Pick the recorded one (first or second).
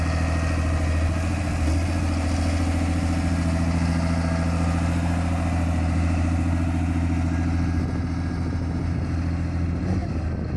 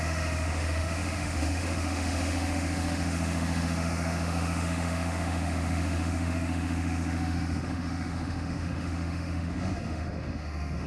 first